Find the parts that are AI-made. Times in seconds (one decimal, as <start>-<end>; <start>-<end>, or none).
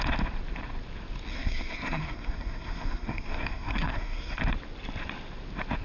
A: 1.3-4.4